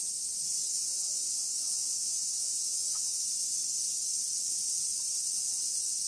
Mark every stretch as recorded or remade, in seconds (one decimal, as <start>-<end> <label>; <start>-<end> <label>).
0.0-0.6 recorded; 0.6-3.2 remade; 3.2-6.1 recorded